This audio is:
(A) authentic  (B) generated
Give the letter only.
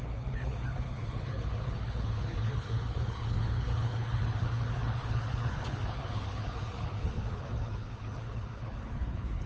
B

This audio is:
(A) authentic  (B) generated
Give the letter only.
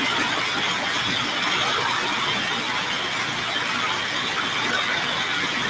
A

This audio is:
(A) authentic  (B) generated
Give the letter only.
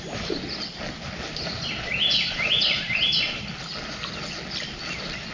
A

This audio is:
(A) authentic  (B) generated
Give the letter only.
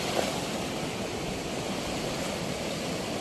A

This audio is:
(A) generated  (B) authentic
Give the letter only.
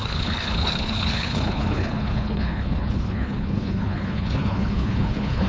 A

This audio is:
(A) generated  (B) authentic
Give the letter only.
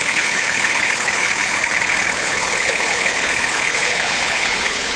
A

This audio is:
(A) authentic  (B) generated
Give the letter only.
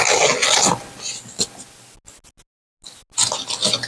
A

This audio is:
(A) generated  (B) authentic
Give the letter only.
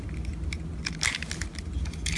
B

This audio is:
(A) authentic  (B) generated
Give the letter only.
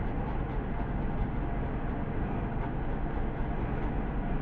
A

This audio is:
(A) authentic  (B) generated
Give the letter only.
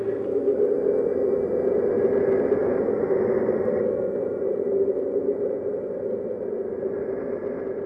A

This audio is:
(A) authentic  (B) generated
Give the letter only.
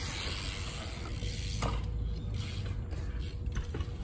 A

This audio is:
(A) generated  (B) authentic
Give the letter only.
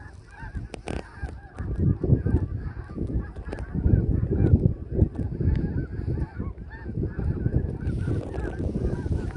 B